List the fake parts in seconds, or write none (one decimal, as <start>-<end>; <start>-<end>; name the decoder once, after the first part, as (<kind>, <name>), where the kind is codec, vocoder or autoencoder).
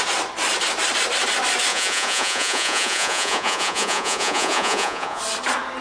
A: 1.7-5.2 (vocoder, Vocos)